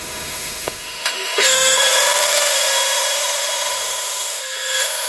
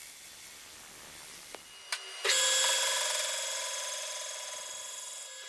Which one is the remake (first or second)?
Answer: first